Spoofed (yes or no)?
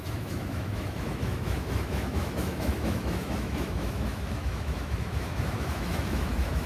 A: yes